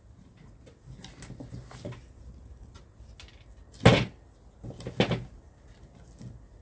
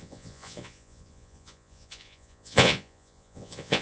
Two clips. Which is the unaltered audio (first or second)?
first